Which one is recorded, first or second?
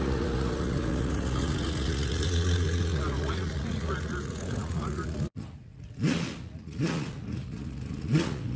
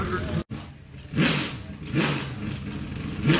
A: second